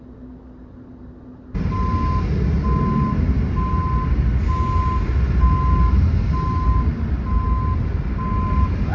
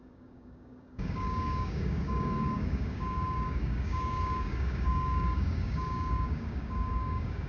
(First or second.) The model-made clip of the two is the second